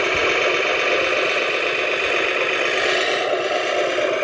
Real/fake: real